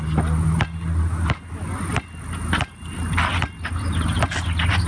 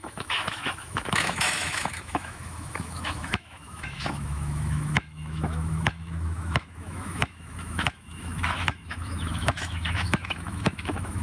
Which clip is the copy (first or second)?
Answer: second